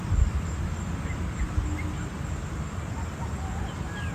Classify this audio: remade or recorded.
recorded